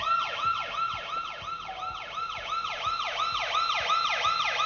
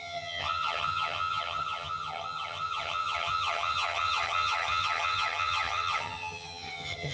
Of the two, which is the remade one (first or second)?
second